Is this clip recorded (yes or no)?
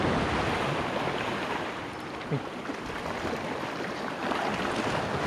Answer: yes